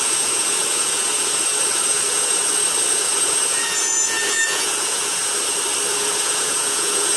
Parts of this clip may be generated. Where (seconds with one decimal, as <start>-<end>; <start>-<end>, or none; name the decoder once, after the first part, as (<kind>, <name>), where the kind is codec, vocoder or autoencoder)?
0.0-5.2 (vocoder, Vocos); 5.9-7.2